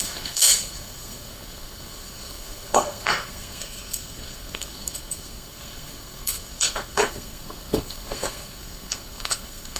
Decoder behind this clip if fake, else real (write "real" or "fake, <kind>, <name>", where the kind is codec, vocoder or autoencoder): fake, codec, SNAC